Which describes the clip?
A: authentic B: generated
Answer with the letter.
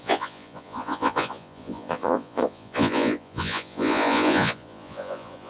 B